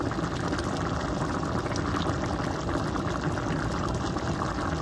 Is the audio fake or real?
real